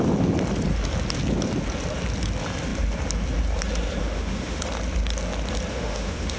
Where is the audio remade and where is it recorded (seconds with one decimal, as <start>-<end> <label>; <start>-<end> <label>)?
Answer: 0.0-4.0 recorded; 4.0-4.6 remade; 4.6-5.7 recorded; 5.7-6.4 remade